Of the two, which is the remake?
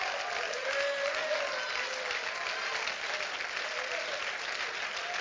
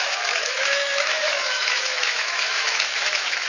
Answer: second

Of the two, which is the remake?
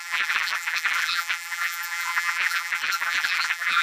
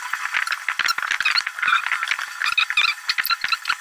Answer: first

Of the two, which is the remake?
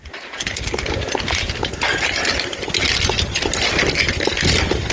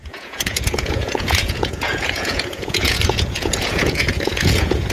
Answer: second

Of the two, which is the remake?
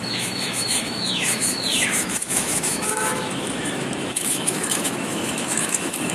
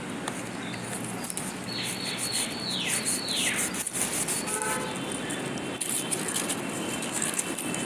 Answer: first